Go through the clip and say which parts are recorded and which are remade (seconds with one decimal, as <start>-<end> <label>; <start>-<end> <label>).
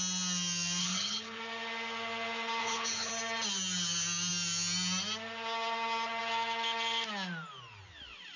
0.0-0.8 recorded; 0.8-1.4 remade; 1.4-2.6 recorded; 2.6-3.1 remade; 3.1-8.4 recorded